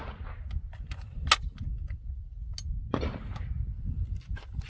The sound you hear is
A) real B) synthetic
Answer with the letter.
A